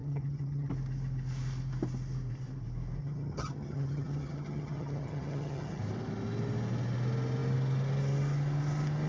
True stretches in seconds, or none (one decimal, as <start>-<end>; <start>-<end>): 0.7-3.0; 5.8-9.1